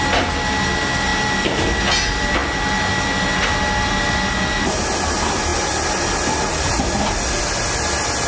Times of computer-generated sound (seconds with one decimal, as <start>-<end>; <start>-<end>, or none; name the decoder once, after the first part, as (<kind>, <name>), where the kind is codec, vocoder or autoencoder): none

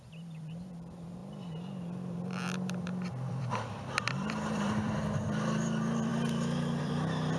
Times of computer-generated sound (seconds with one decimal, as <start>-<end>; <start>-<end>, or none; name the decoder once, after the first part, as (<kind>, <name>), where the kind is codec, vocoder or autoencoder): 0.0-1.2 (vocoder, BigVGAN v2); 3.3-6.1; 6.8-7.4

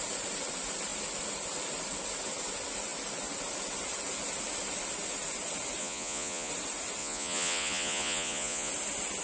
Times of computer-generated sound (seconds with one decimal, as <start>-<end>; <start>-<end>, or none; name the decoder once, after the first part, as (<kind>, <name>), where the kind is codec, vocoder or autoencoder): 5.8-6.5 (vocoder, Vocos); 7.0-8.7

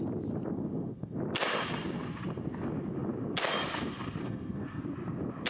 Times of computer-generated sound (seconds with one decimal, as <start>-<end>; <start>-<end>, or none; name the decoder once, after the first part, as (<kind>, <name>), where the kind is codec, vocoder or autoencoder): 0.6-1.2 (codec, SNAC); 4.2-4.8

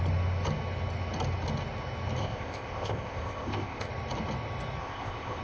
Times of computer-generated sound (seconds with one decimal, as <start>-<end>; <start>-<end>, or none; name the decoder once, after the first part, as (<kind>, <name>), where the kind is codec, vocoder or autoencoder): 2.2-3.9 (codec, ZipCodec); 4.8-5.4